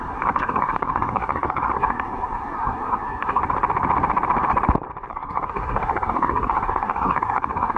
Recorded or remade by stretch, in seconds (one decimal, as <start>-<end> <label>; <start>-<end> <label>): 0.0-3.4 remade; 3.4-5.1 recorded; 5.1-7.8 remade